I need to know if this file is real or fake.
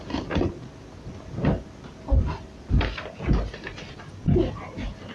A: real